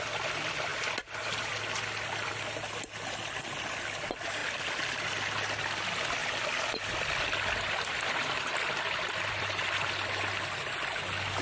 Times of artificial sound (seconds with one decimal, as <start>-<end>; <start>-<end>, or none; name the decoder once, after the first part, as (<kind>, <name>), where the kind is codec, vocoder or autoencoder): 6.2-10.1 (vocoder, BigVGAN v2)